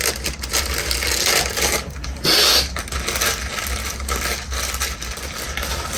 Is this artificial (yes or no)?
no